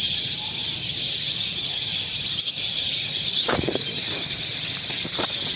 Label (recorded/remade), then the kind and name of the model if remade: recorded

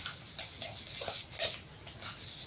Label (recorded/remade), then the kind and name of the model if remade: recorded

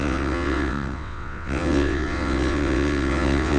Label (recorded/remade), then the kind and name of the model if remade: remade, vocoder, WaveNeXt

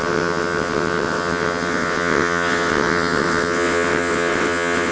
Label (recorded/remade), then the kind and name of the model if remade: remade, vocoder, WaveNeXt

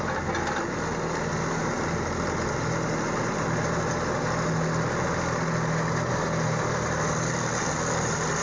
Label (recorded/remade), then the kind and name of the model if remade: recorded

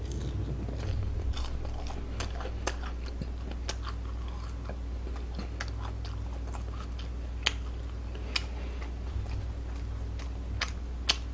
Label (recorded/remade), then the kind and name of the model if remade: recorded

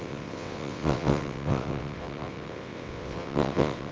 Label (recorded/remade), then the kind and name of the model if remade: remade, vocoder, WaveNeXt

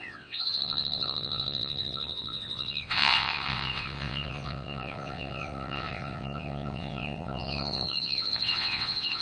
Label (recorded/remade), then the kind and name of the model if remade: remade, vocoder, WaveNeXt